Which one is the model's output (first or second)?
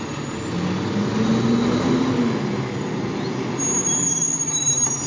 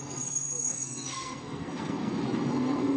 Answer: second